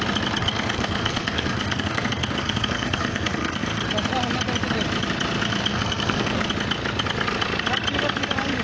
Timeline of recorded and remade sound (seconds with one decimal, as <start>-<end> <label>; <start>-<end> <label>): 0.0-0.4 recorded; 0.4-3.9 remade; 3.9-5.7 recorded; 5.7-6.5 remade; 6.5-8.6 recorded